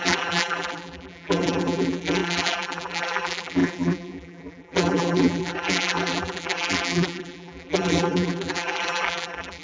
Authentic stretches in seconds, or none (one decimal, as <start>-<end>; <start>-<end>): none